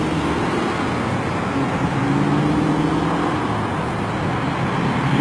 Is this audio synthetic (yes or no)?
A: no